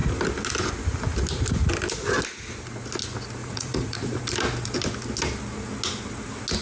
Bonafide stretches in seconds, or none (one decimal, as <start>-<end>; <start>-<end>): 0.0-3.4; 4.2-6.6